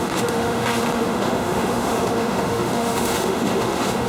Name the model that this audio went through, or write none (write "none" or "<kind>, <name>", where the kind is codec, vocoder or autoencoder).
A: autoencoder, DAC-VAE